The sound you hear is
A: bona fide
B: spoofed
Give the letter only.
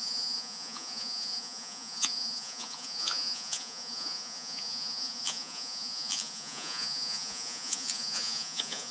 B